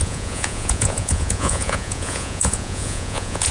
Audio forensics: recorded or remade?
remade